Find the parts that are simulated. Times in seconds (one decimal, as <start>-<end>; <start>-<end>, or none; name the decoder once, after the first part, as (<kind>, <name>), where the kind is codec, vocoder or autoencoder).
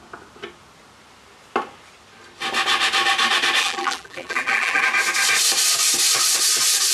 3.6-4.8 (vocoder, BigVGAN v2)